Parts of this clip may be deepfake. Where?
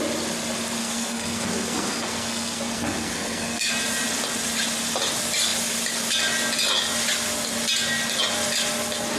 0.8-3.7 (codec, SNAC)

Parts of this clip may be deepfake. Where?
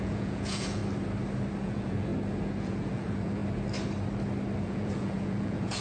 0.0-0.8 (vocoder, Vocos); 1.6-2.1; 2.6-3.4; 4.6-5.8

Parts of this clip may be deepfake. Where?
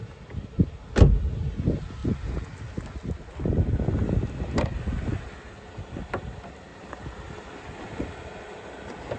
none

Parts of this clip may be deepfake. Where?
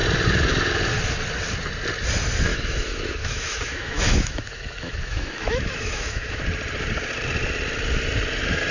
2.5-6.4 (autoencoder, DAC-VAE)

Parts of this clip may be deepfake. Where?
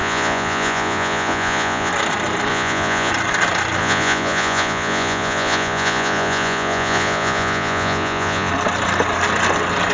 0.0-1.9 (vocoder, Vocos); 2.5-3.1; 3.8-8.5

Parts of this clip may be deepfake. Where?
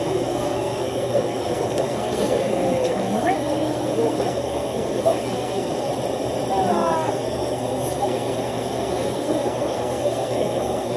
0.0-5.9 (codec, SNAC); 6.7-11.0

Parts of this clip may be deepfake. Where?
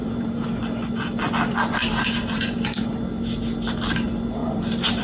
0.0-0.6 (vocoder, BigVGAN v2); 1.8-2.8; 4.4-5.0